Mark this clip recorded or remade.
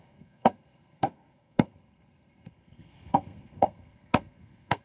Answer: remade